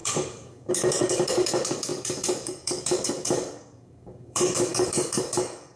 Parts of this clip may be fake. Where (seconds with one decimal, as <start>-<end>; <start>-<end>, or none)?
0.0-5.8